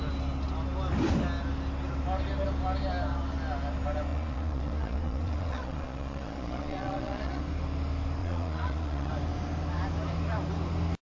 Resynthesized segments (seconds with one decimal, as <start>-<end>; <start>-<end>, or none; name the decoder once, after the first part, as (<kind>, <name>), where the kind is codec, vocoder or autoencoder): 4.1-7.4 (vocoder, Vocos); 8.2-9.1